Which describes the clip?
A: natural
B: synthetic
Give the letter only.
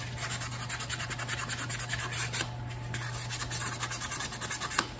A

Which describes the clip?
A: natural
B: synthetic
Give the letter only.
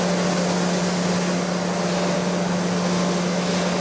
A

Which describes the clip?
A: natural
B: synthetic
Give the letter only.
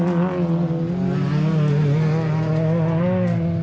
A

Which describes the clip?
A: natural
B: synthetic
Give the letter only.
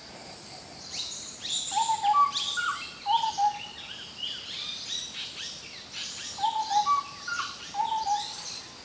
A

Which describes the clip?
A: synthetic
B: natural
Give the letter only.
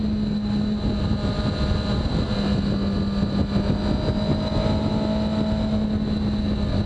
B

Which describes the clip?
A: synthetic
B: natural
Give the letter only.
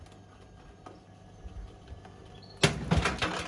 B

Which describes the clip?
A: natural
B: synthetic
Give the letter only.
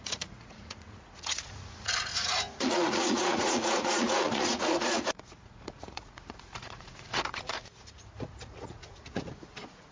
B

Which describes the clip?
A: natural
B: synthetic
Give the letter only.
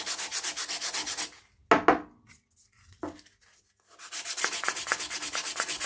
A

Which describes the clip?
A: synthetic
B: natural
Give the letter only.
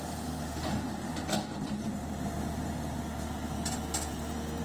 B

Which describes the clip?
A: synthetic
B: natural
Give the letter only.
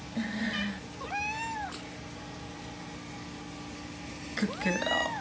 B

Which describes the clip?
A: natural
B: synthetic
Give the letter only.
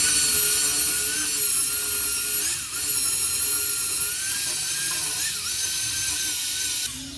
A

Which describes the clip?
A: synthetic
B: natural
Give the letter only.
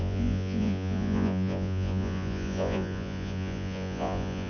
A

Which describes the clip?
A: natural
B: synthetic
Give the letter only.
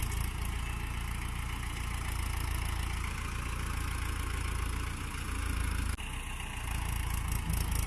A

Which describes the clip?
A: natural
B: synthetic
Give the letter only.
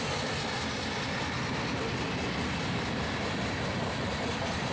A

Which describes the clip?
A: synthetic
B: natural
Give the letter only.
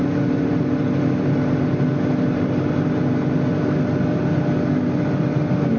B